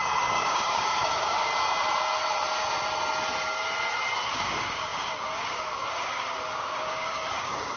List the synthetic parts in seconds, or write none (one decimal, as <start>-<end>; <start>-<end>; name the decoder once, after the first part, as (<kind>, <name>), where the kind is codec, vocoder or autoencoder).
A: 0.0-1.5 (codec, DAC); 4.3-7.8